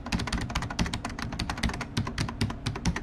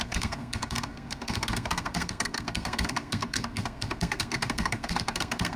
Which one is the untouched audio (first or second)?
first